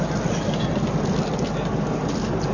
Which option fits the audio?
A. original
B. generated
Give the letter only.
A